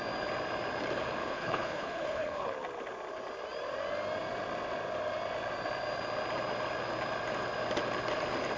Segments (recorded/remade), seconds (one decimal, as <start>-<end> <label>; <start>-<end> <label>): 0.0-1.2 recorded; 1.2-2.5 remade; 2.5-8.6 recorded